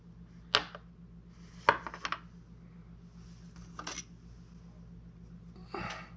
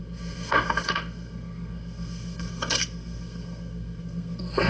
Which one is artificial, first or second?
second